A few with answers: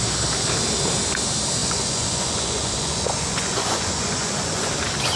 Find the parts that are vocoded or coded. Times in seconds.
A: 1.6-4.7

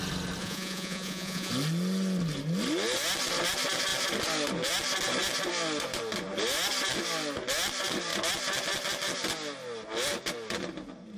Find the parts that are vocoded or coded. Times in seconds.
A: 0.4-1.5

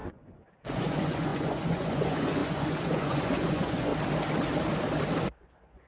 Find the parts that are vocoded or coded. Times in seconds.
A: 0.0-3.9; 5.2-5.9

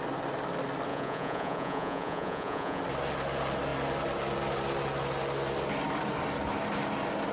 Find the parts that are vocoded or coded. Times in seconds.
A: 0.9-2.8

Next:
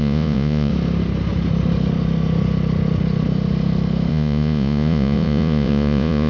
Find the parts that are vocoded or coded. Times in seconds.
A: 0.0-0.7; 4.1-6.3

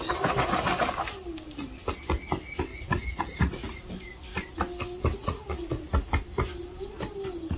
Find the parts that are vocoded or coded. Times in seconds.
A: 2.7-3.9; 5.1-5.7